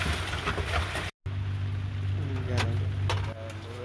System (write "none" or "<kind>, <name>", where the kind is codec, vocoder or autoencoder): none